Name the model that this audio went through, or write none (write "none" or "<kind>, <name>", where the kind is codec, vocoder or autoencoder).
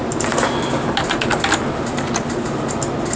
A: none